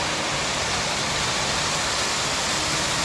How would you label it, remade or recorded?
recorded